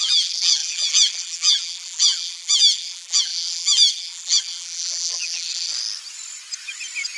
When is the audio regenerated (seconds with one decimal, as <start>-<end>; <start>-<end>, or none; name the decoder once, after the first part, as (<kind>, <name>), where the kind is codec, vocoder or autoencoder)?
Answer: 0.0-5.7 (vocoder, BigVGAN v2)